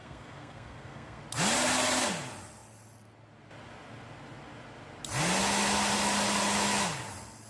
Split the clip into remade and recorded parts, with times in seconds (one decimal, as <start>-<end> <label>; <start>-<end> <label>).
0.0-1.2 remade; 1.2-7.5 recorded